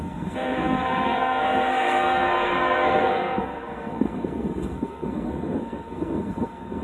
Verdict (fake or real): fake